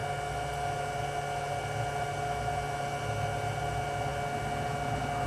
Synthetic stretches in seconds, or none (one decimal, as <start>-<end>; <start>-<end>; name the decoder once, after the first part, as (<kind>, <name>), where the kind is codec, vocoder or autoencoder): none